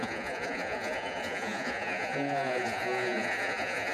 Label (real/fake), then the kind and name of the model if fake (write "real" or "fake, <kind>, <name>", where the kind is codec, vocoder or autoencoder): fake, vocoder, Vocos